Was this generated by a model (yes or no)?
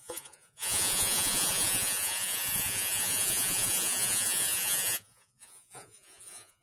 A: yes